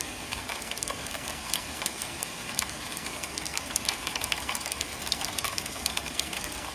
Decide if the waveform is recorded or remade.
remade